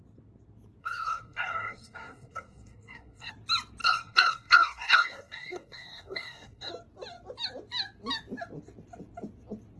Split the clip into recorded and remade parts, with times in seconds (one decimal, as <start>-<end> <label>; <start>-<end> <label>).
0.0-0.8 recorded; 0.8-3.3 remade; 3.3-3.8 recorded; 3.8-6.7 remade; 6.7-9.8 recorded